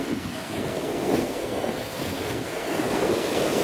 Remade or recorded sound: remade